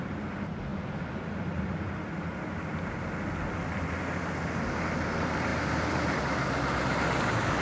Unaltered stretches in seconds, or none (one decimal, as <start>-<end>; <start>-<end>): 0.0-5.5; 6.2-7.6